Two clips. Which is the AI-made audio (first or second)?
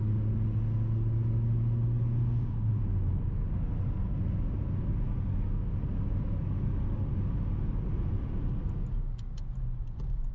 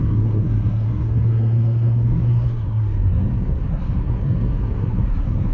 second